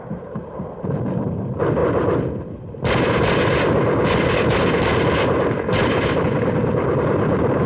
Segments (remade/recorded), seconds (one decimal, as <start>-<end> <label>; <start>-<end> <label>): 0.0-7.7 recorded